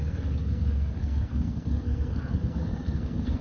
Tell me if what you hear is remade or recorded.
remade